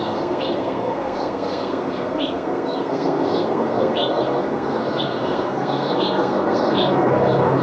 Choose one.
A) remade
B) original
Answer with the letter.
A